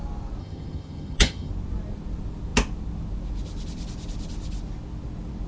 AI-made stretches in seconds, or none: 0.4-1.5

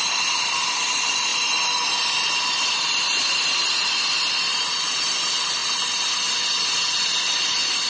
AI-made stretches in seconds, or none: none

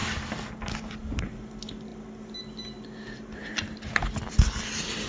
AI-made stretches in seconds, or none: none

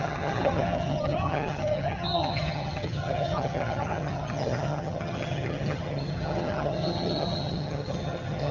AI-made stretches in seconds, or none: 0.0-8.5